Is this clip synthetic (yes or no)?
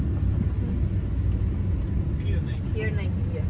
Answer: no